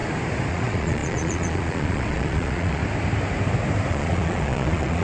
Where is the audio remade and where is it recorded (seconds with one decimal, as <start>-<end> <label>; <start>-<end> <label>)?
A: 0.0-0.5 recorded; 0.5-2.8 remade; 2.8-3.9 recorded; 3.9-5.0 remade